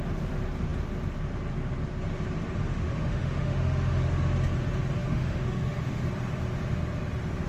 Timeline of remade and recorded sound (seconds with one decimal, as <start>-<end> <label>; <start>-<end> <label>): 0.0-2.7 recorded; 2.7-4.0 remade; 4.0-5.0 recorded; 5.0-6.0 remade; 6.0-7.5 recorded